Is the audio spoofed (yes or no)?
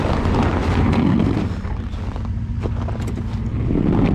no